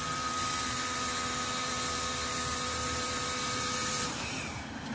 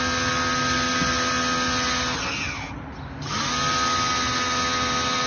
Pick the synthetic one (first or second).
first